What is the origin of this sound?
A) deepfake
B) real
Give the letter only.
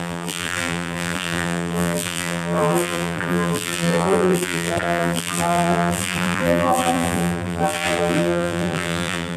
A